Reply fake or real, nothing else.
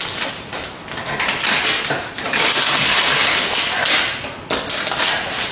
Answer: real